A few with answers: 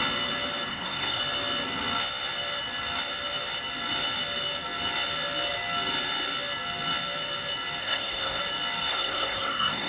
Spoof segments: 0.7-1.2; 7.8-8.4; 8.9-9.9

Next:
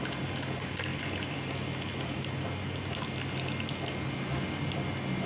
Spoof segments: none

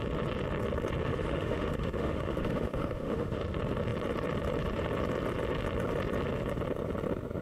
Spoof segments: 1.1-3.4